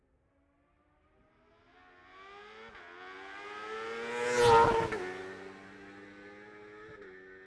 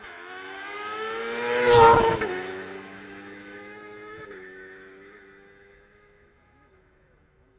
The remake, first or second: second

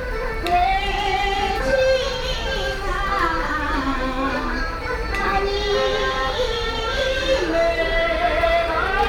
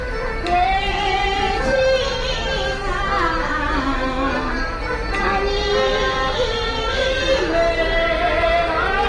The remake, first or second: first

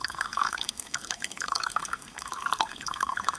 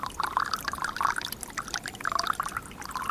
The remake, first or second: first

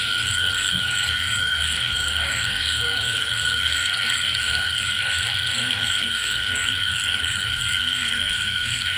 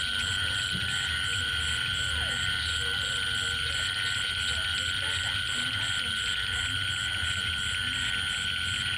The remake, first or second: first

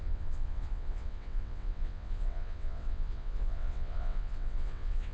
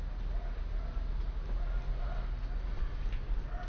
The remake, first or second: first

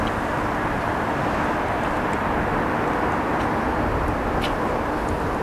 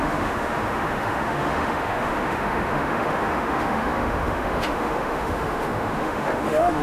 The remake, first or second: second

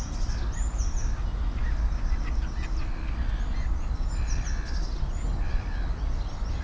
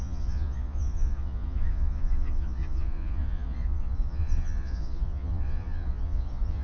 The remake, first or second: second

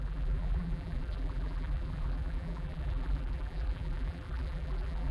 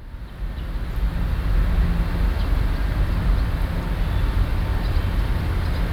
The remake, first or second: first